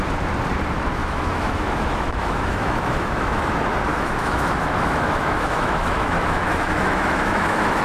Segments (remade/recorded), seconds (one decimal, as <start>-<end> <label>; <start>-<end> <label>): 0.0-1.0 recorded; 1.0-3.4 remade; 3.4-3.9 recorded; 3.9-7.8 remade